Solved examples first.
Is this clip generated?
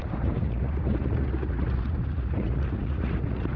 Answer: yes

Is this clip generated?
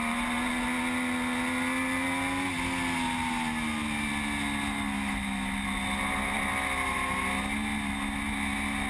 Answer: no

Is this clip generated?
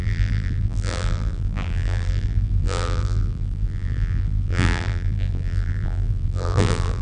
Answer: yes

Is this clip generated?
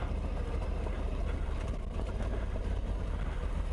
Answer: no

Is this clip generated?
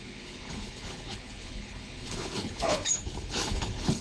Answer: yes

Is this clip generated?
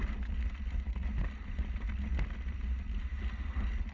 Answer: no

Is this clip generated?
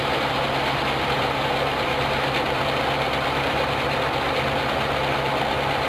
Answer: no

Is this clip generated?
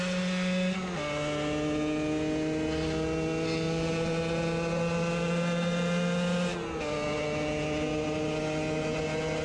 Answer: no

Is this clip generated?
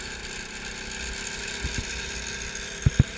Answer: no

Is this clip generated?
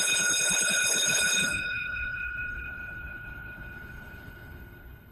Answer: yes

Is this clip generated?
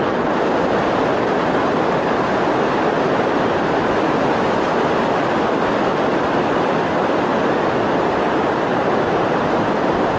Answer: no